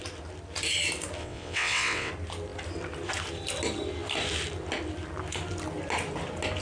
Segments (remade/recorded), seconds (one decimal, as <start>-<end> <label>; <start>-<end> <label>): 0.0-1.2 recorded; 1.2-2.1 remade; 2.1-6.6 recorded